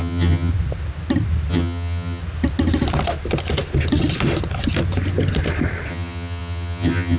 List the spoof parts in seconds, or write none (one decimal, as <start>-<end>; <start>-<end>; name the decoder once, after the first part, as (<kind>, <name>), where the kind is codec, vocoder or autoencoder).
0.0-0.5 (vocoder, HiFi-GAN); 1.5-2.2; 5.9-7.2